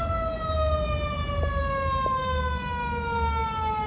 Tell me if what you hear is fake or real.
real